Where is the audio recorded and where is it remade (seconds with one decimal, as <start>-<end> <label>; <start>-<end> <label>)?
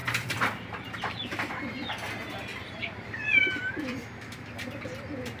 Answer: 0.0-1.5 remade; 1.5-2.5 recorded; 2.5-3.7 remade; 3.7-5.4 recorded